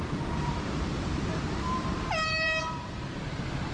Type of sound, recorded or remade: remade